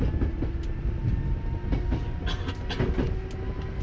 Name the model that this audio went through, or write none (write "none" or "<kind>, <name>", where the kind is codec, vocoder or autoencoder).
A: none